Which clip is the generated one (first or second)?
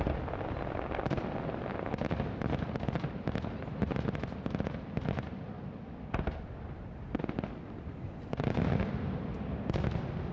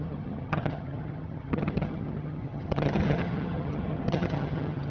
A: second